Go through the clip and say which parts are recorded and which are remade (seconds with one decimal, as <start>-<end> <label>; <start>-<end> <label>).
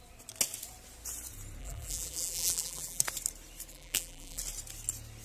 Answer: 0.0-1.6 recorded; 1.6-3.0 remade; 3.0-3.7 recorded; 3.7-4.4 remade; 4.4-5.2 recorded